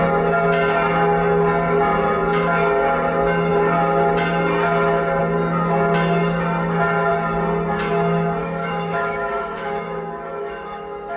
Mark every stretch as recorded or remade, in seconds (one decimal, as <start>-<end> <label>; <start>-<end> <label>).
0.0-8.4 recorded; 8.4-11.2 remade